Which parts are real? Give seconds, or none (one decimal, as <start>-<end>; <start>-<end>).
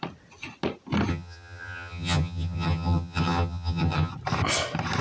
0.0-1.1; 4.1-5.0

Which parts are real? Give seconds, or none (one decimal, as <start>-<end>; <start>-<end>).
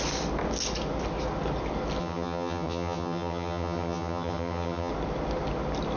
0.0-2.0; 4.9-6.0